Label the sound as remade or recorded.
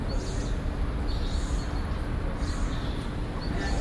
recorded